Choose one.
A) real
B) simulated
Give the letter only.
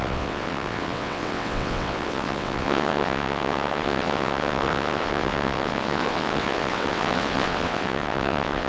B